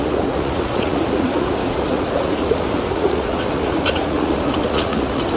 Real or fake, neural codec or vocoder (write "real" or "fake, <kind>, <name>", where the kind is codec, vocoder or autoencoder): fake, vocoder, Vocos